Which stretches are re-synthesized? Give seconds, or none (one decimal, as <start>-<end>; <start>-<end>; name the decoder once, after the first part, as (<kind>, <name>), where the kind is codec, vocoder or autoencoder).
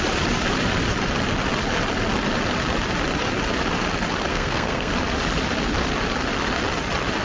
4.3-4.9 (codec, SNAC)